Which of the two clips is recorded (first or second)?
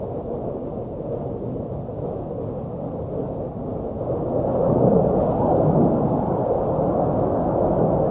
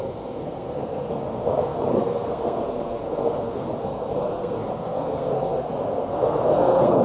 first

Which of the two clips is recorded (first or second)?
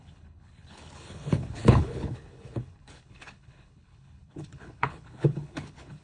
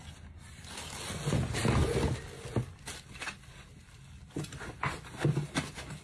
second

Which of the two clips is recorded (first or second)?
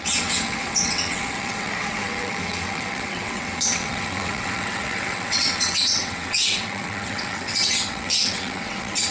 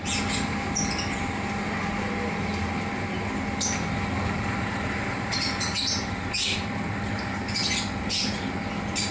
second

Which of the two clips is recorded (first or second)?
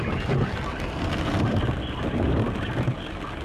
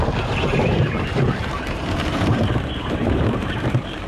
first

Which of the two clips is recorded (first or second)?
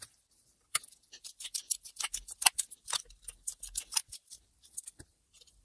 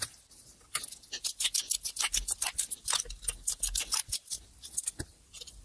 second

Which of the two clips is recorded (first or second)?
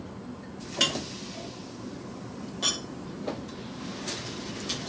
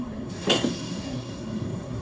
first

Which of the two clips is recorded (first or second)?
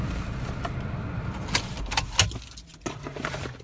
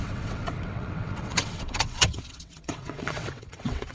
first